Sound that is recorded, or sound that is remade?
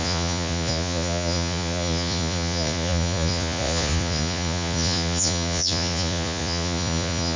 remade